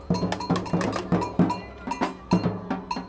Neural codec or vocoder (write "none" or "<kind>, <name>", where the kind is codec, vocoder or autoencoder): none